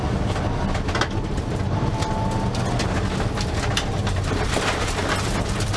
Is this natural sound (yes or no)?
yes